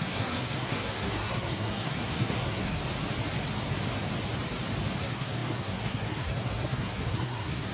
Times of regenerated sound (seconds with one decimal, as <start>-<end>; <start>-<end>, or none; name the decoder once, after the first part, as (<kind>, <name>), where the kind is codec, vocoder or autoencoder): 0.0-2.8 (codec, SNAC); 5.0-7.7